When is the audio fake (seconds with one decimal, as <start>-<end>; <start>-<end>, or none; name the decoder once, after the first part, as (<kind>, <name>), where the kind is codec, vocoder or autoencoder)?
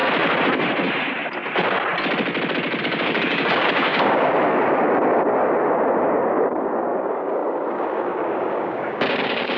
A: 2.8-4.3 (codec, DAC); 6.0-9.6